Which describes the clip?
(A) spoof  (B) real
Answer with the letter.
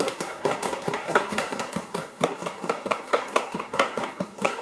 A